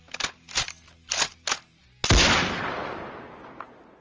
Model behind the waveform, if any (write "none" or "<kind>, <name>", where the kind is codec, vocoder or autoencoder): none